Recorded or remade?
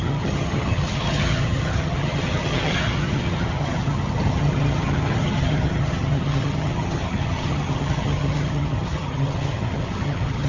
remade